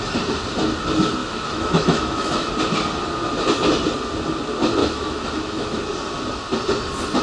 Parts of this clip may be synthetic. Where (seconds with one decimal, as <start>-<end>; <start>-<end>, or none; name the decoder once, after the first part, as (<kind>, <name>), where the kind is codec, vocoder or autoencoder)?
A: 1.2-2.5 (autoencoder, DAC-VAE); 4.8-5.8

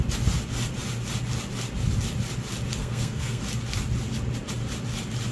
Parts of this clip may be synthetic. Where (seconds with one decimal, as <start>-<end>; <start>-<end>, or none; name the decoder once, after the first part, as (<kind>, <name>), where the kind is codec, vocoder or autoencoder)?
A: 2.8-3.4 (codec, SNAC)

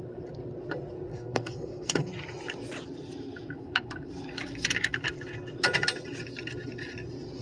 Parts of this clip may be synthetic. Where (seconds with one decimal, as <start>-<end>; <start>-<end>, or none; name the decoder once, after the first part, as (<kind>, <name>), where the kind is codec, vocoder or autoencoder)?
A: 1.1-2.1 (codec, SNAC)

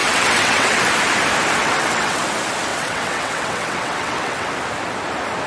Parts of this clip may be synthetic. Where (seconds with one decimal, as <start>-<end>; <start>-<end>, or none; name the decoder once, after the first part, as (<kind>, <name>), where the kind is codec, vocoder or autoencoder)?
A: 0.0-0.8 (vocoder, WaveNeXt); 1.6-2.2; 2.7-4.5